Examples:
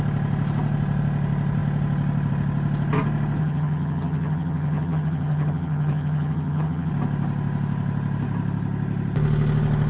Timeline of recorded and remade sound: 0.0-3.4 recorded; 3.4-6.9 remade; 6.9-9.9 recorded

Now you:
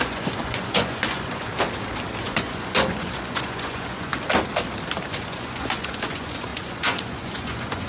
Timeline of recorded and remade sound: 0.0-1.5 remade; 1.5-2.2 recorded; 2.2-4.1 remade; 4.1-5.1 recorded; 5.1-7.9 remade

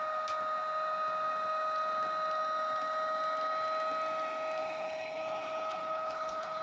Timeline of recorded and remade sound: 0.0-4.6 recorded; 4.6-6.6 remade

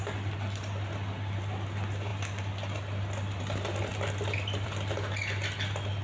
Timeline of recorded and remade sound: 0.0-3.9 recorded; 3.9-5.0 remade; 5.0-6.0 recorded

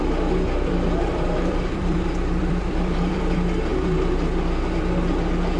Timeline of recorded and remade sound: 0.0-3.7 remade; 3.7-5.6 recorded

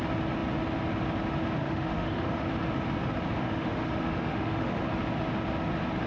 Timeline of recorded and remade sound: 0.0-1.6 recorded; 1.6-2.5 remade; 2.5-3.4 recorded; 3.4-4.8 remade; 4.8-6.1 recorded

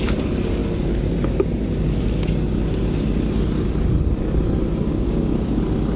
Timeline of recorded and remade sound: 0.0-4.9 recorded; 4.9-5.6 remade; 5.6-6.0 recorded